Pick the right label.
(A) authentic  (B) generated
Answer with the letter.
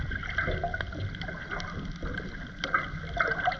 A